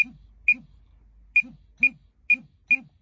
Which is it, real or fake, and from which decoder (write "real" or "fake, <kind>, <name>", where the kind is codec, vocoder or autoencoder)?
real